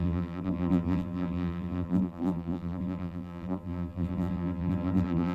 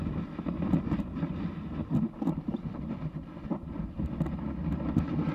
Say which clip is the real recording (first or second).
second